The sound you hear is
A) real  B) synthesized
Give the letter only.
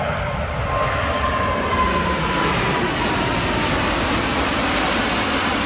A